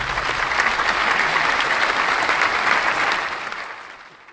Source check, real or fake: real